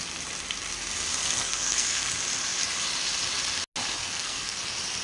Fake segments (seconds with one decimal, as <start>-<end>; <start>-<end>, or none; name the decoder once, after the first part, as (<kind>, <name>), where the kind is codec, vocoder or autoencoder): 1.2-2.1 (codec, SNAC); 4.0-4.6